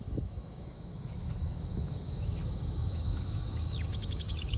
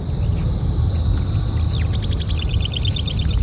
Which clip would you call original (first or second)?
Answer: second